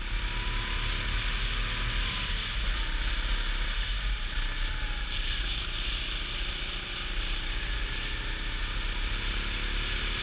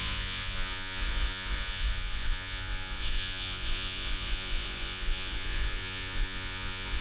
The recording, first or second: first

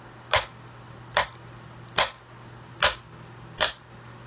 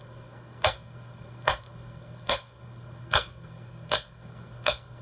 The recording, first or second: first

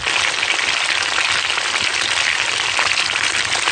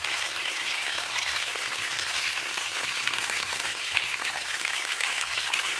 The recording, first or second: first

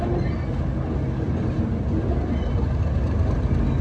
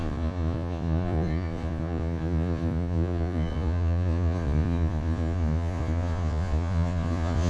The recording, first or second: first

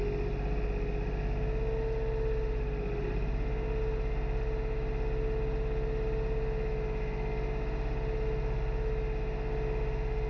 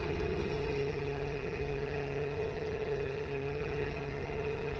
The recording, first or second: first